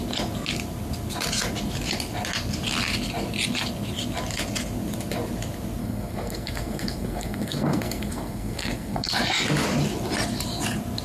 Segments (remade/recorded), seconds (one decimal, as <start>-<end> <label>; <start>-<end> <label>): 0.0-5.8 recorded; 5.8-9.1 remade; 9.1-11.0 recorded